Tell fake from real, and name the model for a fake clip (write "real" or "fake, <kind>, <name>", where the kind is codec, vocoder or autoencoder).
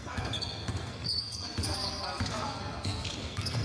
fake, codec, SNAC